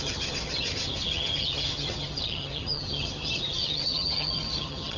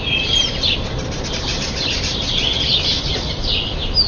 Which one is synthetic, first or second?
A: first